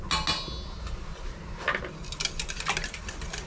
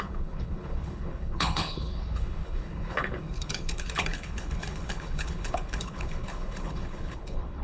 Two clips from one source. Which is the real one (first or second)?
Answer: first